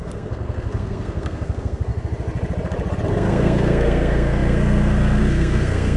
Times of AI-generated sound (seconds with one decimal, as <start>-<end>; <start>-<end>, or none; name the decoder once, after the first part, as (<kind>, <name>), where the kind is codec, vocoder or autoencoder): 0.0-1.9 (codec, SNAC); 3.1-6.0